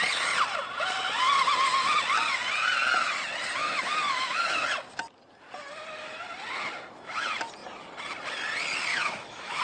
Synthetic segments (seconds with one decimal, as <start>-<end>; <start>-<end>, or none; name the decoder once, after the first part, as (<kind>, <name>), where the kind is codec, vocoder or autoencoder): 3.6-4.6 (autoencoder, DAC-VAE); 8.9-9.6